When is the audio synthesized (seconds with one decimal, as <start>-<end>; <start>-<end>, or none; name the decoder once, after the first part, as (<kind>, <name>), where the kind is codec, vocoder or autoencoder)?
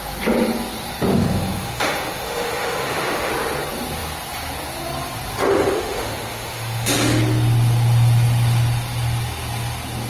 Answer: 1.1-3.3 (autoencoder, DAC-VAE); 5.5-7.2